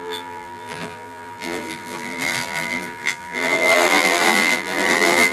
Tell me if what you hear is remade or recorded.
remade